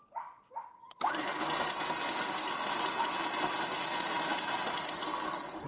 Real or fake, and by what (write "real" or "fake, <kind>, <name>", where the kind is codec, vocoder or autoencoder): real